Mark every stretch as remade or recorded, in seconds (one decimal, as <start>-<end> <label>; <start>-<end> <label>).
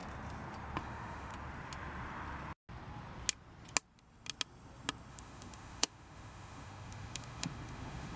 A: 0.0-0.8 recorded; 0.8-1.3 remade; 1.3-5.1 recorded; 5.1-8.2 remade